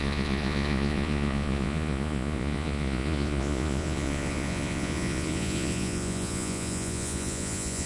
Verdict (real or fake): fake